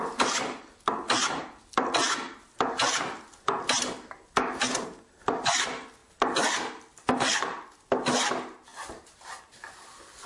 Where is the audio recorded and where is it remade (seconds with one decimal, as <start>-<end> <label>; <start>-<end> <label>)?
0.0-10.3 recorded